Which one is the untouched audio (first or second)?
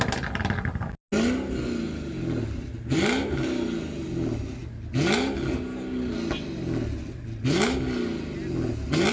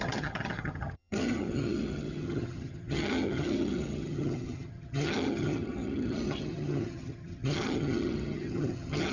first